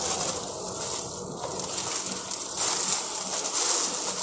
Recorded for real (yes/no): yes